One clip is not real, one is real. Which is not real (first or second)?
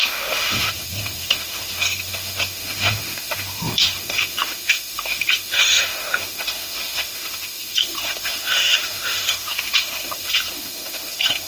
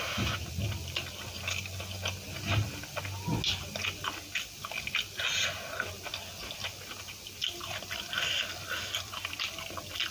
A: first